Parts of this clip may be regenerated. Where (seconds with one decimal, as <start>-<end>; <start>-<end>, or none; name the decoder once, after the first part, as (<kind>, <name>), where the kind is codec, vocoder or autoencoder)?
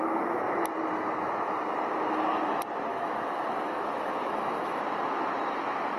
2.9-4.8 (autoencoder, DAC-VAE)